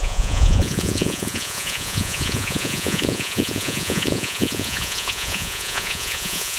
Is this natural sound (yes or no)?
no